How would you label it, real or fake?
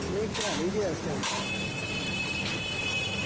real